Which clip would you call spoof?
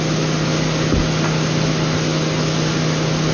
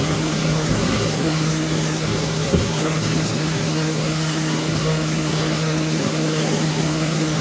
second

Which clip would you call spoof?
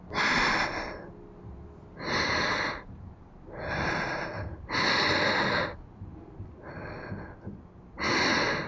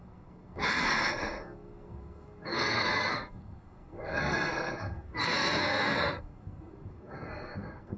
second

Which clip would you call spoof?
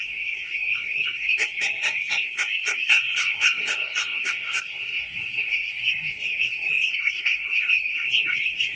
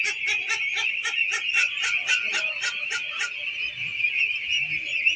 first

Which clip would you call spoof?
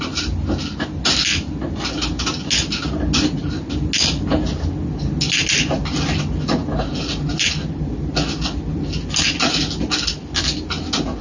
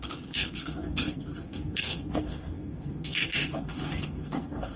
second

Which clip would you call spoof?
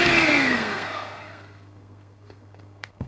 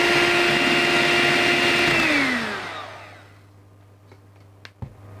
first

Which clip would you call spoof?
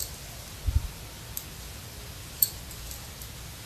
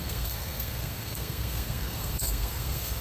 second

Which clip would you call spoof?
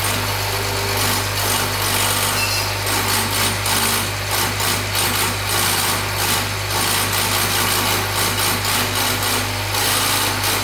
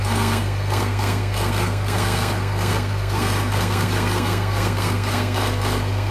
second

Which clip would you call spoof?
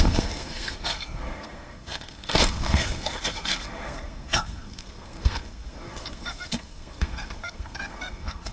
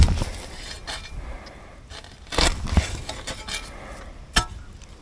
first